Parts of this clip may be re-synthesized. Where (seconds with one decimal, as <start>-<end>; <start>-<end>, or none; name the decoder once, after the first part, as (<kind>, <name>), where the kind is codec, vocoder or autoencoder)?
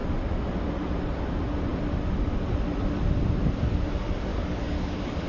4.3-5.3 (codec, DAC)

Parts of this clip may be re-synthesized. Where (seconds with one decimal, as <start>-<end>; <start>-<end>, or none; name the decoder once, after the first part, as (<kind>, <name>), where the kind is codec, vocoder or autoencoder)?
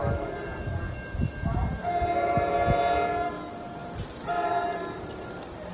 none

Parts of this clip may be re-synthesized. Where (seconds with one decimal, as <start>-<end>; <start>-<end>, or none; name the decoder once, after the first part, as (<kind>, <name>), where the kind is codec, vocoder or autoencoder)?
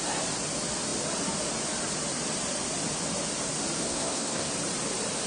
3.8-4.5 (codec, SNAC)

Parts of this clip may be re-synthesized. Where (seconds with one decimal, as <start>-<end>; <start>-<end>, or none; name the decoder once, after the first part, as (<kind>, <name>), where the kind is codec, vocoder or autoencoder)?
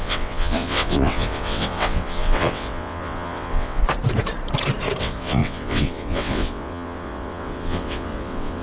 0.0-3.8 (vocoder, WaveNeXt); 5.0-8.6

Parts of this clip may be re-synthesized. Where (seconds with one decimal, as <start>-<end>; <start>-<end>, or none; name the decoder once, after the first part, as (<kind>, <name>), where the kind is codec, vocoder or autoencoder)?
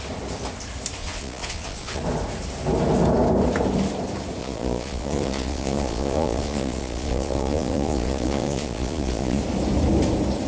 1.0-2.0 (vocoder, Vocos); 4.4-9.4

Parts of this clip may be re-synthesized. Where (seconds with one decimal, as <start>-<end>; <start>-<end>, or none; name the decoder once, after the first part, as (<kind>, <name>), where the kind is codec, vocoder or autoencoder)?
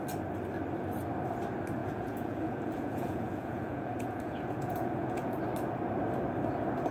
1.8-5.4 (vocoder, Vocos)